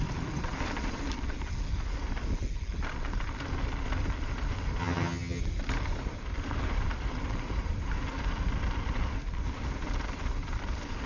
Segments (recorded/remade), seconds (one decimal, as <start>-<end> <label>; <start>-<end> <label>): 0.0-4.8 recorded; 4.8-5.4 remade; 5.4-11.1 recorded